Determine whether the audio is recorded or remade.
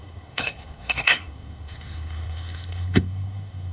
remade